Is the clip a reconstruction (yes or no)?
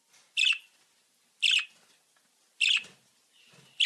no